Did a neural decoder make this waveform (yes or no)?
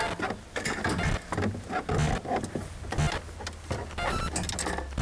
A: no